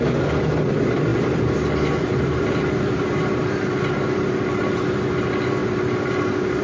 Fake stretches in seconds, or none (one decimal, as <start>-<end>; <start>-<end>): none